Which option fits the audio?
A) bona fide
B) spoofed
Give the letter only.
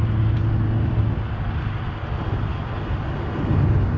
A